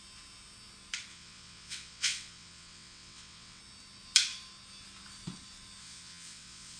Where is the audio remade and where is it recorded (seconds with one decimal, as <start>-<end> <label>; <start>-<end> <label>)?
0.0-1.1 recorded; 1.1-3.6 remade; 3.6-5.8 recorded; 5.8-6.8 remade